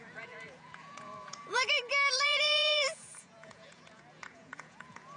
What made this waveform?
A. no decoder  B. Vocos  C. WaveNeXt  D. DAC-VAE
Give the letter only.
B